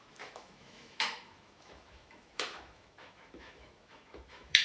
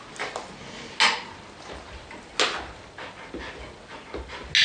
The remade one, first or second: first